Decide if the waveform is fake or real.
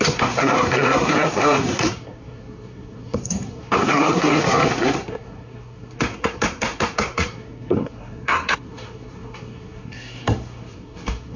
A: fake